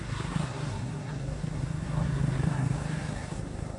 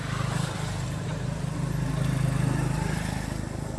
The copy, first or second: first